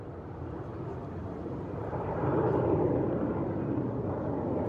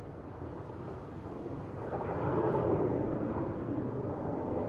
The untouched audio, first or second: first